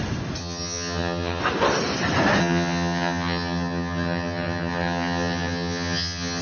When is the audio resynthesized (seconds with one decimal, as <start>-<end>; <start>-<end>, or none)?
0.4-1.4; 2.4-6.4